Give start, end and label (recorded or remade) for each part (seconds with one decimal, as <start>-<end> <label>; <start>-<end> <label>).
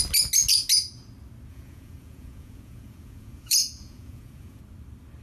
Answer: 0.0-1.5 recorded; 1.5-4.6 remade; 4.6-5.2 recorded